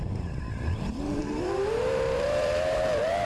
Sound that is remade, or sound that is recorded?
remade